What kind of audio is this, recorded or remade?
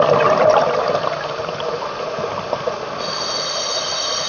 recorded